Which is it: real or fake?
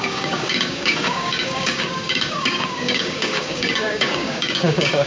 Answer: fake